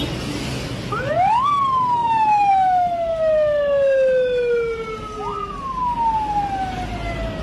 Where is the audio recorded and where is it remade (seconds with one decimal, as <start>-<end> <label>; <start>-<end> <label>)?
0.0-7.4 recorded